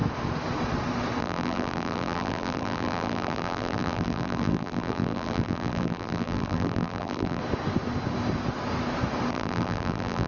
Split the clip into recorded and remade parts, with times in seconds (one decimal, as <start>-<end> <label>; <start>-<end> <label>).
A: 0.0-1.2 recorded; 1.2-7.4 remade; 7.4-9.3 recorded; 9.3-10.3 remade